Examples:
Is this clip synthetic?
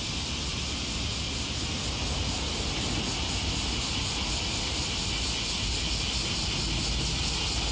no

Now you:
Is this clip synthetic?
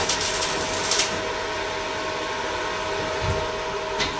no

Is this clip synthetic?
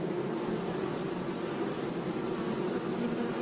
no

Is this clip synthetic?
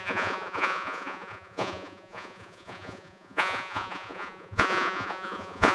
yes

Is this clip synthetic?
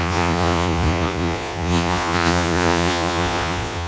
yes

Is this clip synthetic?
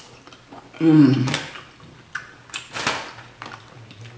no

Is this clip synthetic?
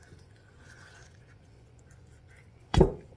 yes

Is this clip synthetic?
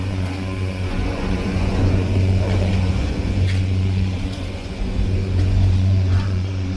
yes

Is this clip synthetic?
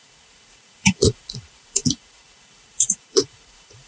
yes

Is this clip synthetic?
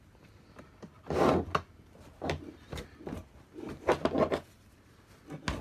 no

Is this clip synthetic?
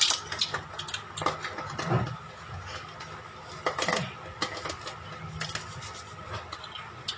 no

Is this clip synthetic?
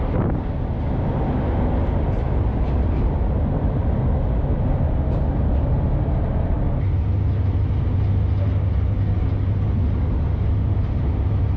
no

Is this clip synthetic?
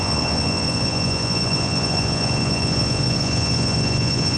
yes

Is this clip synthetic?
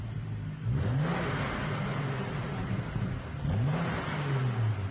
no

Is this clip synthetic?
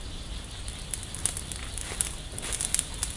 no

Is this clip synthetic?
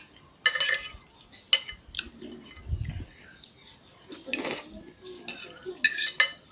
no